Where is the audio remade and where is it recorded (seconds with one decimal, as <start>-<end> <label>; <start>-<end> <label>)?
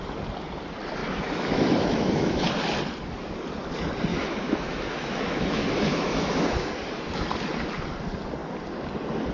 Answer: 0.0-1.0 recorded; 1.0-2.5 remade; 2.5-4.1 recorded; 4.1-6.7 remade; 6.7-9.3 recorded